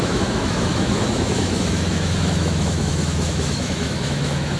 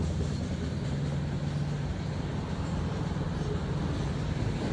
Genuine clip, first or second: second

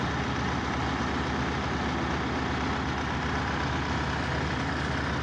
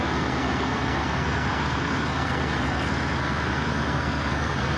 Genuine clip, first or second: first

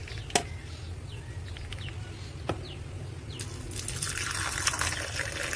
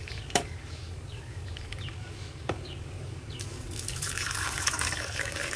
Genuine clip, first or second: first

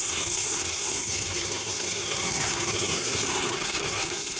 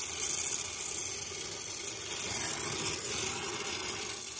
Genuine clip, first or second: second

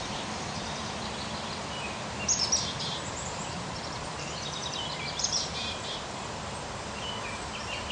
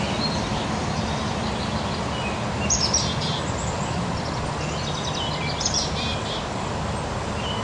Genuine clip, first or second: second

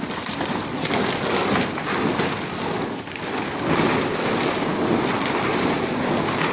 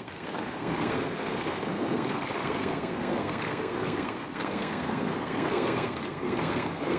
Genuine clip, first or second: first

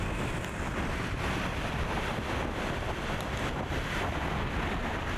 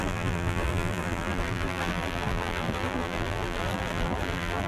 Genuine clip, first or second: first